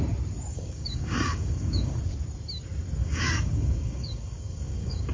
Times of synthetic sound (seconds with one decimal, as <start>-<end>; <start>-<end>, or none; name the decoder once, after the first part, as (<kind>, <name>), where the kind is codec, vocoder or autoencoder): 0.5-2.0 (codec, DAC); 3.0-5.1